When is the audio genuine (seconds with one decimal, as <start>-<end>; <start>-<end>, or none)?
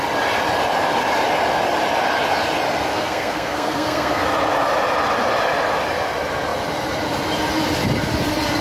0.0-2.9; 4.2-8.6